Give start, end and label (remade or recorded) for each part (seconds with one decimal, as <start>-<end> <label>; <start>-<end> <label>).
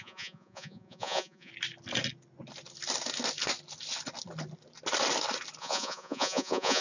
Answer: 0.0-1.5 remade; 1.5-5.6 recorded; 5.6-6.8 remade